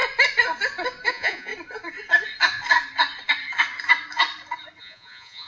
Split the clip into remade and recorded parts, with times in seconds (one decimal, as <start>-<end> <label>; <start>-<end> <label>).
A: 0.0-1.1 recorded; 1.1-1.5 remade; 1.5-4.8 recorded; 4.8-5.5 remade